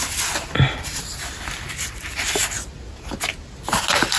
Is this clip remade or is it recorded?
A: recorded